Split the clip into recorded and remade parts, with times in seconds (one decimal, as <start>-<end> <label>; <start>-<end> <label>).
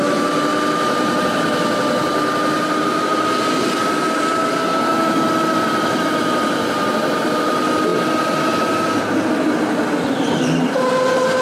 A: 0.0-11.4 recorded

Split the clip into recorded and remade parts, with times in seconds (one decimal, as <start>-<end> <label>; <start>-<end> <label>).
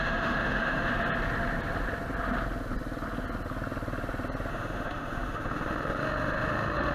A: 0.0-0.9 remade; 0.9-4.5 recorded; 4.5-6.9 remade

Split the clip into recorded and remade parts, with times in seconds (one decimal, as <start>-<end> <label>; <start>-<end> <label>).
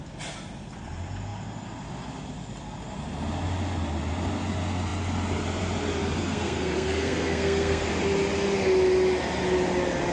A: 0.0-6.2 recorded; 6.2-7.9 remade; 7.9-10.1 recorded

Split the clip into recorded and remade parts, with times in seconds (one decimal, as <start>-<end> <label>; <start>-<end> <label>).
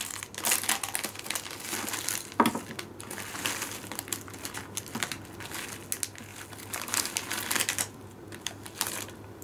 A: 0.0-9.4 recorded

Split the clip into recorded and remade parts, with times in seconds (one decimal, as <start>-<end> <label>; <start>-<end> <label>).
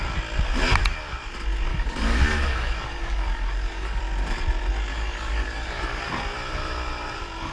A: 0.0-1.7 recorded; 1.7-4.0 remade; 4.0-4.9 recorded; 4.9-6.0 remade; 6.0-7.5 recorded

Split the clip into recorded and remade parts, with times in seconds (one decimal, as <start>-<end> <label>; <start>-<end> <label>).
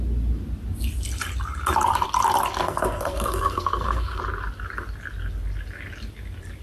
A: 0.0-2.6 recorded; 2.6-4.2 remade; 4.2-6.6 recorded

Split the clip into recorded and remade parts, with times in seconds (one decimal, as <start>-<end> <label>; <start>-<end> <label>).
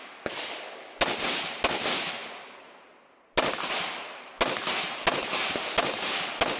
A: 0.0-6.6 recorded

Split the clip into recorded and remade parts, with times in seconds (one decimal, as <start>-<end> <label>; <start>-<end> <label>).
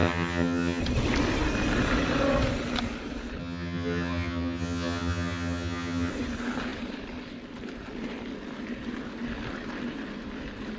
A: 0.0-0.8 remade; 0.8-3.4 recorded; 3.4-6.1 remade; 6.1-10.8 recorded